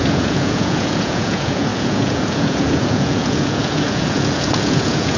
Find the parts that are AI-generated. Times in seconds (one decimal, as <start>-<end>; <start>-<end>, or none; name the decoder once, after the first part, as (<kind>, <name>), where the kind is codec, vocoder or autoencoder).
0.0-5.2 (vocoder, Vocos)